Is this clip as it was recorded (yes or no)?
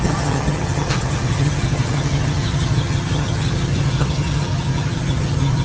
no